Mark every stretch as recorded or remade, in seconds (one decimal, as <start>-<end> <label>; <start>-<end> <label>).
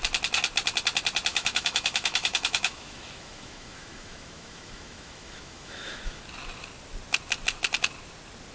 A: 0.0-1.3 recorded; 1.3-6.2 remade; 6.2-8.5 recorded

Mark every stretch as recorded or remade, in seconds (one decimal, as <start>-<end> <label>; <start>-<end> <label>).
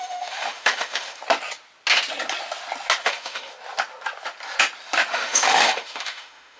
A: 0.0-1.2 remade; 1.2-3.0 recorded; 3.0-3.5 remade; 3.5-5.1 recorded; 5.1-6.6 remade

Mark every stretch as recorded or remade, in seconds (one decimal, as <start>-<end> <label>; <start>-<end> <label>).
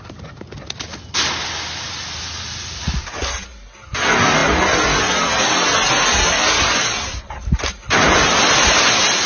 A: 0.0-9.3 recorded